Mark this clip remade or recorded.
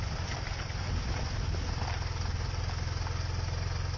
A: recorded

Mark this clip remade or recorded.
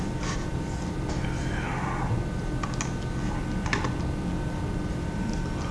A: recorded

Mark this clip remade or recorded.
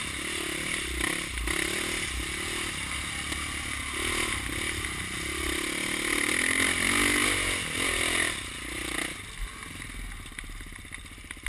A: recorded